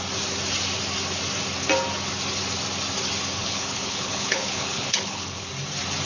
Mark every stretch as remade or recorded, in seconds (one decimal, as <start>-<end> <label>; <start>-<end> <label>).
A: 0.0-3.4 recorded; 3.4-5.5 remade; 5.5-6.1 recorded